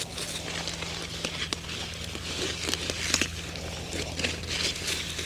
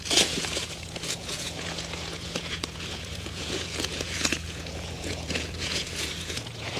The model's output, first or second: second